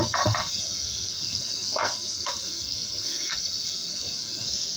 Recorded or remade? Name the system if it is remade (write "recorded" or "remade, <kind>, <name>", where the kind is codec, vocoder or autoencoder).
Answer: remade, codec, SNAC